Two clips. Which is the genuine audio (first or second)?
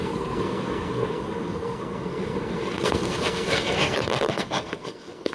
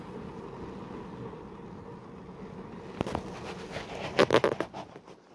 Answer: second